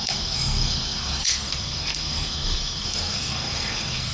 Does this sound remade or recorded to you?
remade